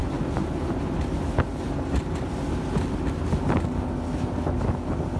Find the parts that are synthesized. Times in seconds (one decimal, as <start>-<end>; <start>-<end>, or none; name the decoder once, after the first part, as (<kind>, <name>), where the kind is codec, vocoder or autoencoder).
0.0-0.7 (vocoder, BigVGAN v2)